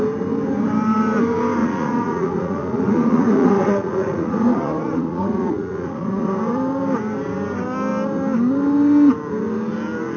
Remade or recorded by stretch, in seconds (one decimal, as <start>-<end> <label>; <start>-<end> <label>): 0.0-1.6 recorded; 1.6-6.3 remade; 6.3-10.2 recorded